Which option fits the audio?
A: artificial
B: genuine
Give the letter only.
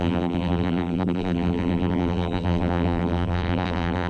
A